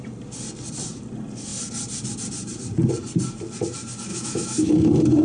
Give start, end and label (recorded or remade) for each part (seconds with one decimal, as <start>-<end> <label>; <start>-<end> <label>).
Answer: 0.0-4.1 recorded; 4.1-4.7 remade; 4.7-5.2 recorded